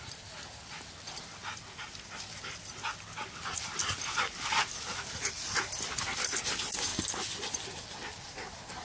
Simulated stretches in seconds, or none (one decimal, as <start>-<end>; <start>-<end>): 6.9-7.8